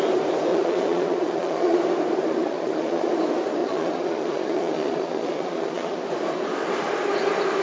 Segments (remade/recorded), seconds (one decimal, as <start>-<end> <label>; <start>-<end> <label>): 0.0-0.5 recorded; 0.5-1.8 remade; 1.8-2.2 recorded; 2.2-3.1 remade; 3.1-3.6 recorded; 3.6-6.0 remade; 6.0-7.6 recorded